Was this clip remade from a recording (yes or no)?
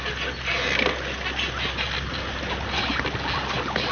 no